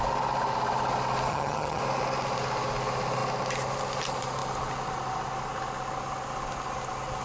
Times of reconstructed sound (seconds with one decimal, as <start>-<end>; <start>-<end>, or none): 1.3-1.8